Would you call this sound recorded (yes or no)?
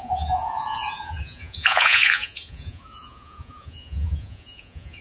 no